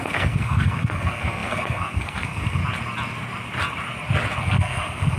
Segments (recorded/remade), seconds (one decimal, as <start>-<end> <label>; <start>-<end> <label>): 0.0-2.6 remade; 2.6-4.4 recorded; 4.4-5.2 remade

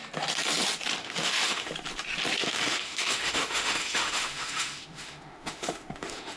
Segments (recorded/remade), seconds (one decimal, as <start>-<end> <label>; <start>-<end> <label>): 0.0-1.0 recorded; 1.0-1.7 remade; 1.7-2.4 recorded; 2.4-6.4 remade

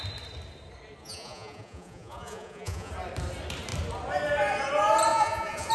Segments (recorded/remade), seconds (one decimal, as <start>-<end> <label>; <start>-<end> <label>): 0.0-1.0 recorded; 1.0-2.9 remade; 2.9-5.1 recorded; 5.1-5.7 remade